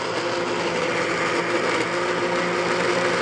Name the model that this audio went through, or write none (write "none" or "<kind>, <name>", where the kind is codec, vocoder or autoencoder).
none